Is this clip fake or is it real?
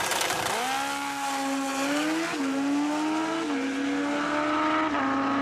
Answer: real